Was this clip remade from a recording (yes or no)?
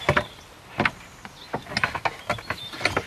no